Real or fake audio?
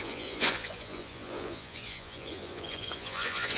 fake